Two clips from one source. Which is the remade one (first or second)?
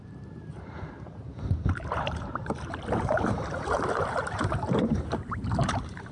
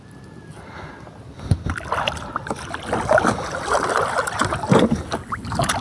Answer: first